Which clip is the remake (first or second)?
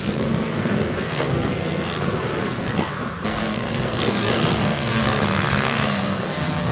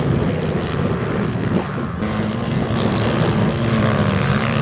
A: first